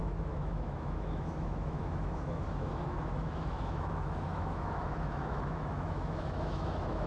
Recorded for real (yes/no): no